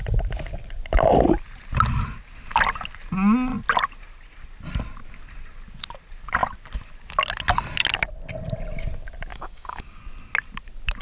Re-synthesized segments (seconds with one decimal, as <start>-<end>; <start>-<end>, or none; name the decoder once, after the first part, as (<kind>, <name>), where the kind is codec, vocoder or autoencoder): 9.3-10.0 (codec, DAC)